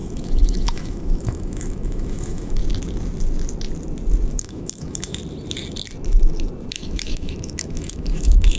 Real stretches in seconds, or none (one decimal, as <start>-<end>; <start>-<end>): 2.6-4.3; 5.2-6.7